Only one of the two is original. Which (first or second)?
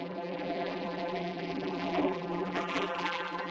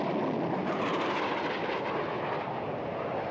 second